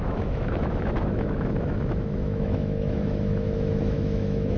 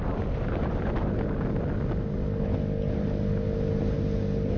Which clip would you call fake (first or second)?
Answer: first